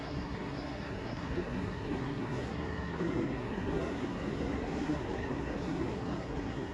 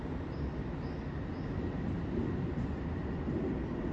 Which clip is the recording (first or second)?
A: second